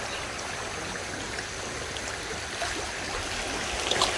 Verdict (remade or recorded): recorded